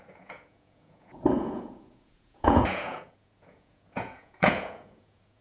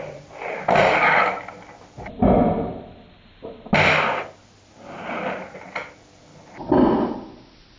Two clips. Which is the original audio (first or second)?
second